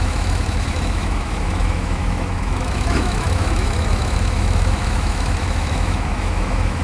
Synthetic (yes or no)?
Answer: yes